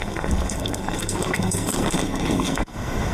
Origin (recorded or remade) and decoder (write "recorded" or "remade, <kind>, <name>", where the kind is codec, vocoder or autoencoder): remade, codec, SNAC